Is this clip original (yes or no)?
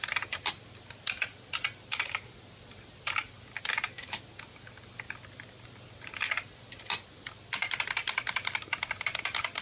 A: yes